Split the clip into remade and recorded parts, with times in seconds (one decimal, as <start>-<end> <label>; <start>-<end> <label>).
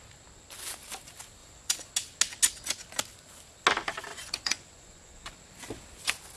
0.0-1.4 recorded; 1.4-1.9 remade; 1.9-4.1 recorded; 4.1-5.3 remade; 5.3-6.4 recorded